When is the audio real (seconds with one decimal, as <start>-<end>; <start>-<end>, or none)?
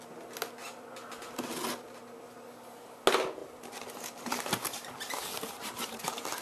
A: 0.0-3.4; 6.0-6.4